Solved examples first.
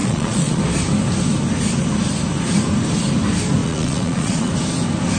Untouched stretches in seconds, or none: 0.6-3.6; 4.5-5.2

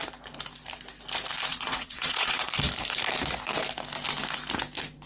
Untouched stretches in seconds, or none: 0.0-1.5; 2.5-5.1